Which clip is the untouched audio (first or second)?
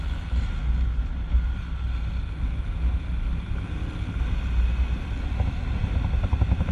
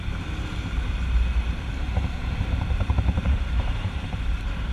first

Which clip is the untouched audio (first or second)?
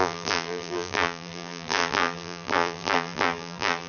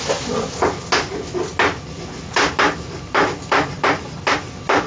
second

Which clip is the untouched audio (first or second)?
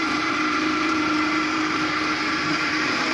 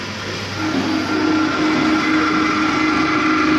second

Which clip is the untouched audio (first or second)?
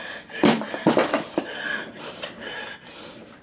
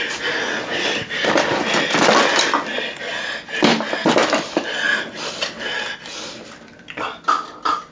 second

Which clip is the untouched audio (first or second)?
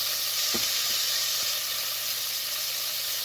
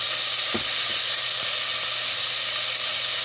second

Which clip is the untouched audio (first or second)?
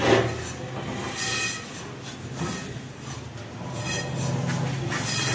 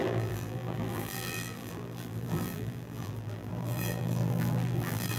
first